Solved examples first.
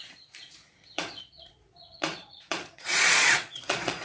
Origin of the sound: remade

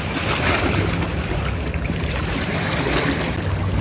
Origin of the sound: recorded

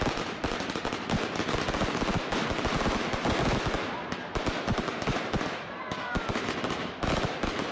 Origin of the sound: recorded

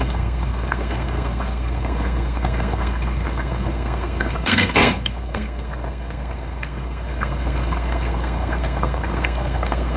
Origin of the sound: remade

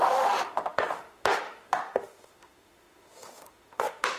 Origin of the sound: remade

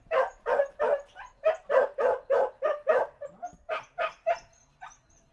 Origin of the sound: recorded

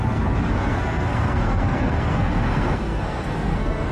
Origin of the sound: remade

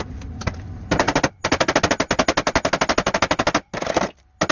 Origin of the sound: recorded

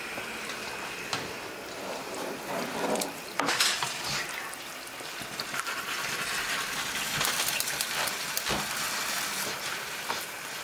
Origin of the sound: recorded